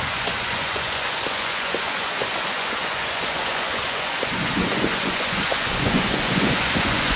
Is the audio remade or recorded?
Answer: remade